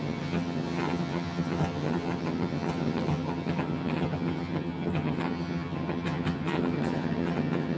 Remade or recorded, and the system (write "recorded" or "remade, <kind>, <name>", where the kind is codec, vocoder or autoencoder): remade, vocoder, HiFi-GAN